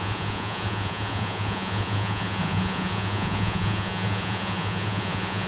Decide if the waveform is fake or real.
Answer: fake